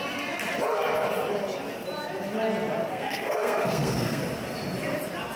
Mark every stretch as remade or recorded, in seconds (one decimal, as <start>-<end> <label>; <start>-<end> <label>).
0.0-2.9 recorded; 2.9-4.2 remade; 4.2-5.4 recorded